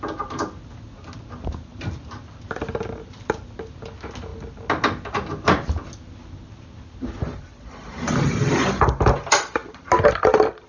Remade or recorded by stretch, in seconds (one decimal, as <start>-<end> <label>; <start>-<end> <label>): 0.0-1.7 recorded; 1.7-3.8 remade; 3.8-10.7 recorded